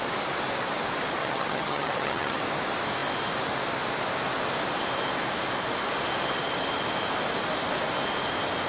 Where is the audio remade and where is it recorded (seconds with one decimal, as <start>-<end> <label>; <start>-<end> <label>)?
0.0-1.2 recorded; 1.2-2.4 remade; 2.4-8.7 recorded